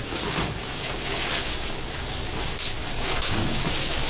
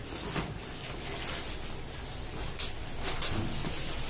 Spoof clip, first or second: first